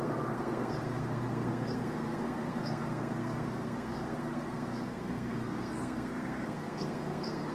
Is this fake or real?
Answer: fake